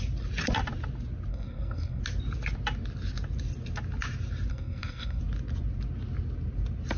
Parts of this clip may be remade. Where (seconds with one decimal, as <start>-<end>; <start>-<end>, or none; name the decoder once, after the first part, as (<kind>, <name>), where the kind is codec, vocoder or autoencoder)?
1.3-2.0 (codec, SNAC); 4.5-5.2